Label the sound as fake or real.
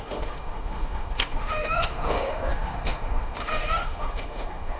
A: fake